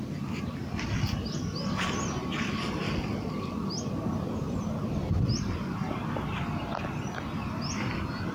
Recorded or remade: recorded